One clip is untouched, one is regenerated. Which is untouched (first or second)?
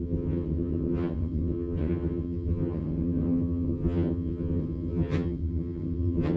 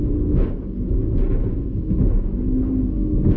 second